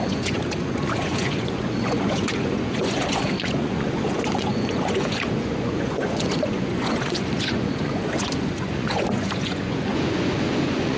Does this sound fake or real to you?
fake